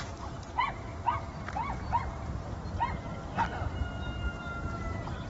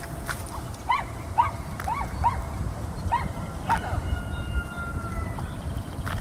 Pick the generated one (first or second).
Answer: second